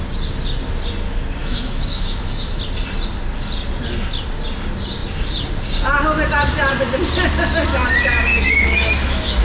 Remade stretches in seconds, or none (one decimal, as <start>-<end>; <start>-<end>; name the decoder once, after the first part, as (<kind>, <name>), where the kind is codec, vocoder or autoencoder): 1.4-2.6 (autoencoder, DAC-VAE); 8.3-9.4